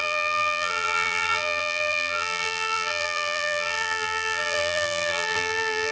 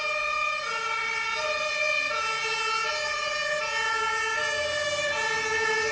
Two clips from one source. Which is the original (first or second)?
second